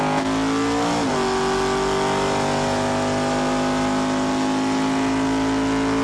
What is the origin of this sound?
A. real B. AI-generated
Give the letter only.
A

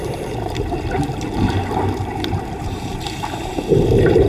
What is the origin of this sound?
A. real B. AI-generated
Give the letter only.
B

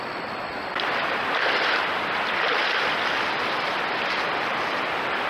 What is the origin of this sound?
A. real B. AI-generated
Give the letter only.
A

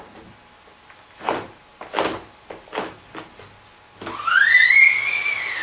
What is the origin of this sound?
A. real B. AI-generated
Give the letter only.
A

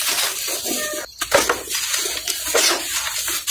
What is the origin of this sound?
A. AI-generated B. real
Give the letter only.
B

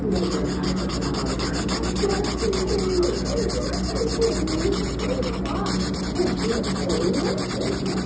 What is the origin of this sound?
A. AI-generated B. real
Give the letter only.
B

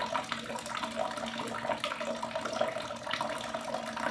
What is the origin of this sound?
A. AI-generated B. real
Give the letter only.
B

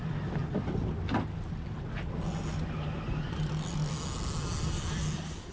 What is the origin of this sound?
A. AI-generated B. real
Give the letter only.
B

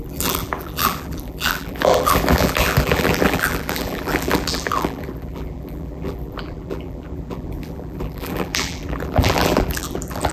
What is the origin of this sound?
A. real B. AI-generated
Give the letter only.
B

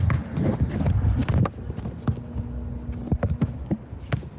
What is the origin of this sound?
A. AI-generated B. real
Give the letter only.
B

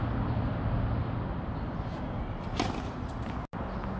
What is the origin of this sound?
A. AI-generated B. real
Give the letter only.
B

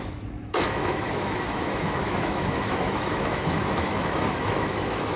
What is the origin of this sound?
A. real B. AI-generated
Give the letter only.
B